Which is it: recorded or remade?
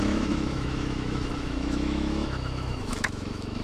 remade